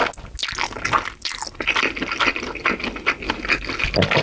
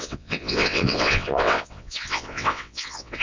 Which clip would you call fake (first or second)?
second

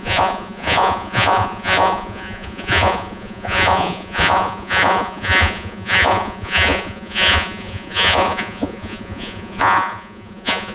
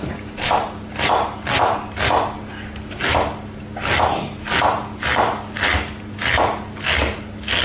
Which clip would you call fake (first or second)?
first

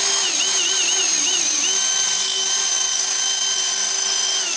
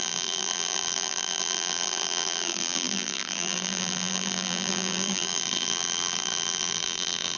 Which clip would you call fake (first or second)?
second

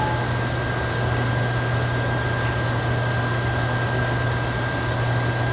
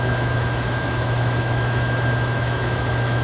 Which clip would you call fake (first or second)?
second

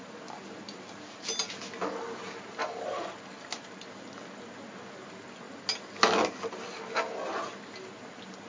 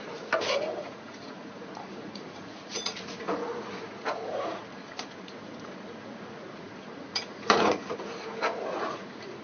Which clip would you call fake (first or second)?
second